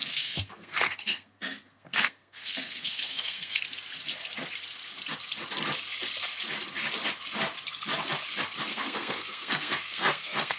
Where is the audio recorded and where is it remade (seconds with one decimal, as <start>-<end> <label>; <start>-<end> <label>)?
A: 0.0-3.6 remade; 3.6-8.7 recorded; 8.7-10.6 remade